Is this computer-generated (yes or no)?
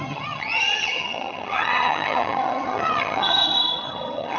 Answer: yes